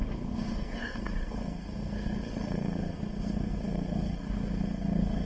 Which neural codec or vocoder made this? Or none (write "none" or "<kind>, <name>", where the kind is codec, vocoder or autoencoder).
codec, SNAC